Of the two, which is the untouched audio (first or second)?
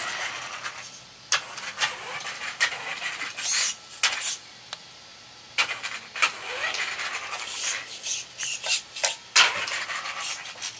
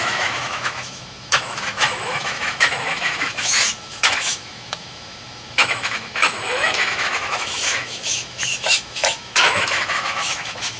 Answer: first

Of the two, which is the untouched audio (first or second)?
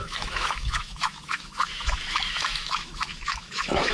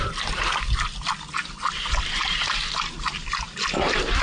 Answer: second